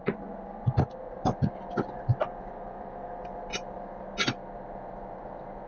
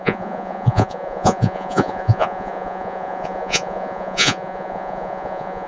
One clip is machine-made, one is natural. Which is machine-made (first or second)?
second